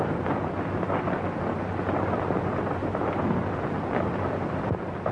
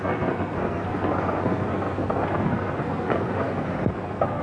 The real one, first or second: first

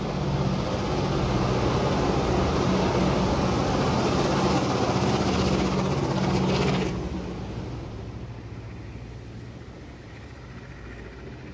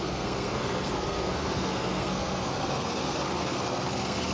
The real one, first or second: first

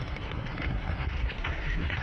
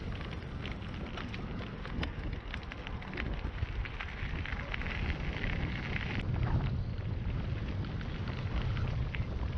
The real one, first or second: second